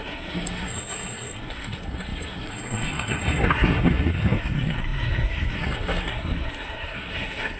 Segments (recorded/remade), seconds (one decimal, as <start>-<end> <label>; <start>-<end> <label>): 0.0-7.6 remade